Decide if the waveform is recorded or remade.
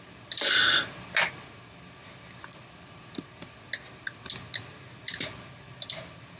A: recorded